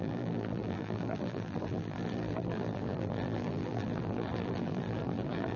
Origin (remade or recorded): remade